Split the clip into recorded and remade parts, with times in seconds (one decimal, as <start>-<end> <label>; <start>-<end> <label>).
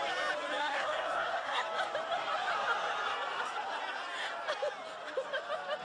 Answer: 0.0-0.6 recorded; 0.6-1.6 remade; 1.6-5.8 recorded